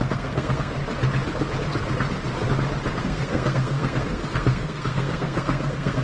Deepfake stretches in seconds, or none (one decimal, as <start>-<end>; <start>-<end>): 0.0-0.8; 3.0-6.0